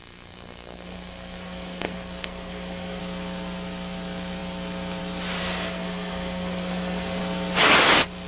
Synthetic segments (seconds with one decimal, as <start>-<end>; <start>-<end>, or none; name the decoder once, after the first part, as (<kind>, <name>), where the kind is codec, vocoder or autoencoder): 0.0-3.0 (codec, SNAC); 5.4-7.2